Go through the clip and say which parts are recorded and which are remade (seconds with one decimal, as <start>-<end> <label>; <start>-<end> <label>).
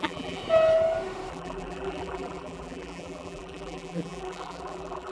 0.0-0.4 remade; 0.4-1.3 recorded; 1.3-5.1 remade